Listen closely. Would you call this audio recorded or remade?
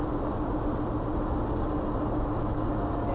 recorded